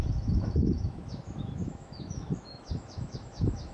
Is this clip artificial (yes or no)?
yes